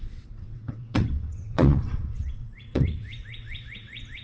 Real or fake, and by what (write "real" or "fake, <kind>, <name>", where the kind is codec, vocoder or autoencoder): fake, vocoder, WaveNeXt